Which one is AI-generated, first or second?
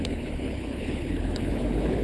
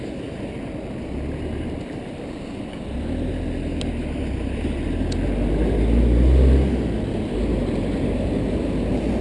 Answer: first